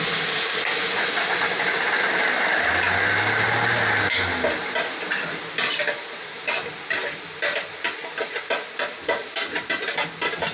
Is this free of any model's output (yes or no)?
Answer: yes